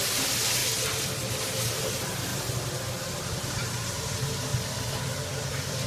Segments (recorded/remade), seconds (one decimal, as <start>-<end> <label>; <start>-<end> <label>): 0.0-0.6 remade; 0.6-1.3 recorded; 1.3-2.3 remade; 2.3-3.3 recorded; 3.3-4.5 remade; 4.5-5.5 recorded; 5.5-5.9 remade